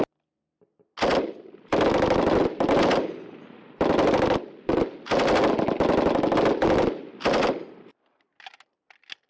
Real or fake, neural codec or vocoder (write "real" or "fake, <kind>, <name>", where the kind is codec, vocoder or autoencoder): real